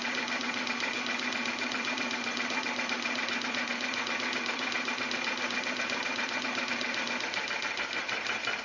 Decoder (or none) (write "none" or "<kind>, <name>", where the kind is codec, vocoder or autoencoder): none